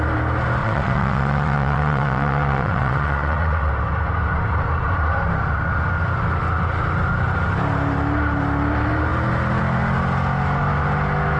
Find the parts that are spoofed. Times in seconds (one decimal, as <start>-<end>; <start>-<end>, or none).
0.6-3.7

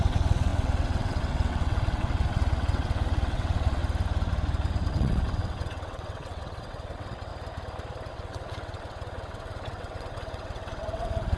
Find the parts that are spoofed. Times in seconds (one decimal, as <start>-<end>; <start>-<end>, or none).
0.0-3.8; 4.9-7.3; 8.1-11.4

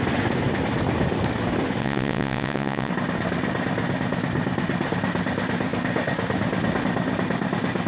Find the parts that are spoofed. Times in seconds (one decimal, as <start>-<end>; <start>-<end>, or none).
1.8-2.9

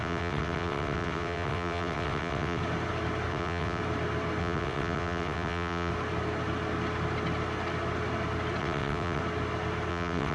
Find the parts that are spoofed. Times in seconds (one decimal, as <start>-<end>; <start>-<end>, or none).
0.0-2.6; 3.3-3.8; 4.4-5.9; 8.6-9.2; 9.9-10.3

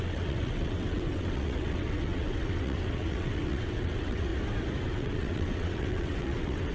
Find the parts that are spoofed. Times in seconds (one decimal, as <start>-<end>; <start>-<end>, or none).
0.0-4.3; 4.8-6.7

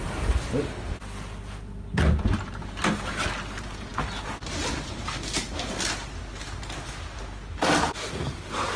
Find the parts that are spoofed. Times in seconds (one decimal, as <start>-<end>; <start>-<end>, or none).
none